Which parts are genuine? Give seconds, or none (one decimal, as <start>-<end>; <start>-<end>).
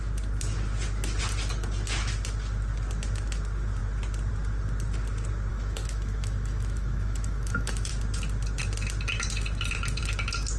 0.0-5.5; 7.9-10.6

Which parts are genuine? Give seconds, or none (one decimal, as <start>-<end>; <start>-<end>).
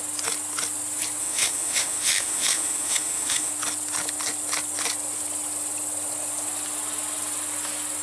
0.0-1.2; 3.5-8.0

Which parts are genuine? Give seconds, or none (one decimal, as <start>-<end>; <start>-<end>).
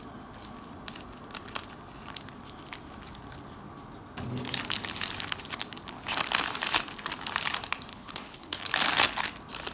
0.0-7.9; 8.6-9.7